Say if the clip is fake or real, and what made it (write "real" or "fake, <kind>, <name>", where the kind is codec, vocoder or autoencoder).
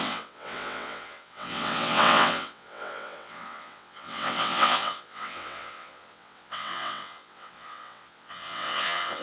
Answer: fake, vocoder, WaveNeXt